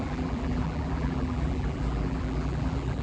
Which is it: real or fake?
fake